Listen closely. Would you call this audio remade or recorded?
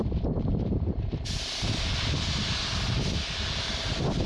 recorded